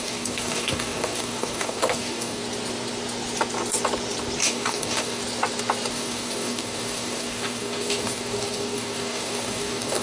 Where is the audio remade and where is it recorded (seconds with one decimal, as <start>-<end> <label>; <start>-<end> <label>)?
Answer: 0.0-2.4 remade; 2.4-4.4 recorded; 4.4-5.2 remade; 5.2-5.9 recorded; 5.9-10.0 remade